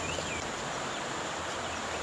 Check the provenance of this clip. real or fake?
real